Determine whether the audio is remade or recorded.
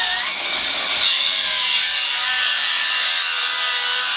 remade